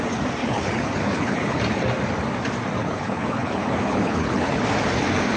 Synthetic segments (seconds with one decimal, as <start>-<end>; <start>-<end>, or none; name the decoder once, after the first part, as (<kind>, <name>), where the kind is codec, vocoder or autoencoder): 0.4-1.6 (codec, HILCodec); 2.8-4.6